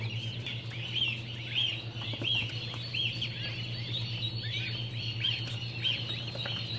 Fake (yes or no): no